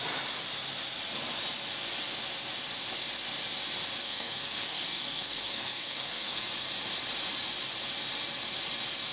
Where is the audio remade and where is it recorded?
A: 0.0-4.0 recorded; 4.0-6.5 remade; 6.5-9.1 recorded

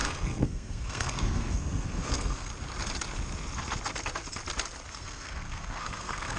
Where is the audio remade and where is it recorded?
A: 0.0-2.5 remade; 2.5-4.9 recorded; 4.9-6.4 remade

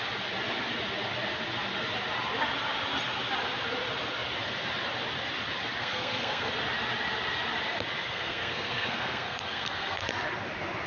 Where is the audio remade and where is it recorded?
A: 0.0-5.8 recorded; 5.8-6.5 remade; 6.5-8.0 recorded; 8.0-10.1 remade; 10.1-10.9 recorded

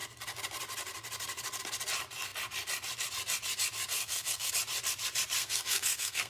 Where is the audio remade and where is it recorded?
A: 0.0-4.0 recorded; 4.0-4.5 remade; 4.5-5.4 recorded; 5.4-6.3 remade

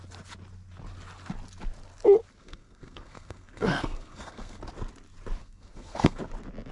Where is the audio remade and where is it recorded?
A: 0.0-2.4 recorded; 2.4-4.6 remade; 4.6-5.4 recorded; 5.4-6.2 remade; 6.2-6.7 recorded

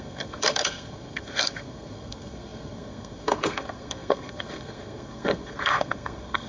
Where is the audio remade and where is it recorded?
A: 0.0-6.5 remade

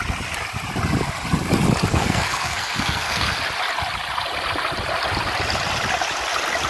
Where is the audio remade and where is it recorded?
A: 0.0-1.9 recorded; 1.9-3.4 remade; 3.4-6.7 recorded

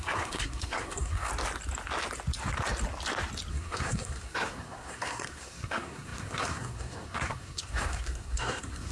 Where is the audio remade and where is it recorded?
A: 0.0-1.3 remade; 1.3-3.5 recorded; 3.5-8.9 remade